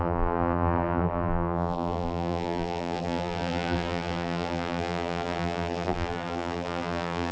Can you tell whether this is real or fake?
fake